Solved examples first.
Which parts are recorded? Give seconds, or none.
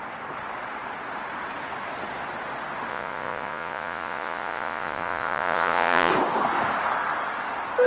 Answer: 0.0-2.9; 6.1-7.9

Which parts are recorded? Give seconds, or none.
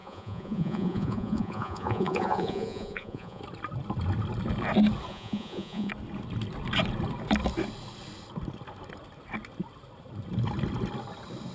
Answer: 3.4-5.1; 5.9-11.5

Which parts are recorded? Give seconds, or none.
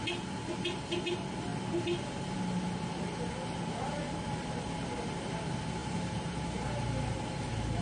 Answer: 0.0-7.8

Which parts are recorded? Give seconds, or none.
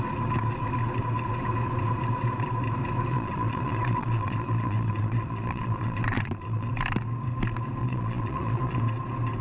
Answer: 0.0-3.1; 6.7-7.8; 8.8-9.4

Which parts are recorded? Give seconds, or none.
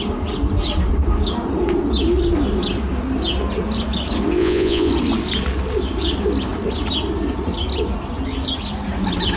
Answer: 0.0-4.4; 4.9-9.4